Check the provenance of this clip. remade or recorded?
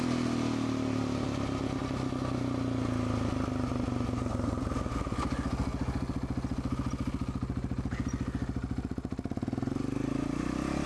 recorded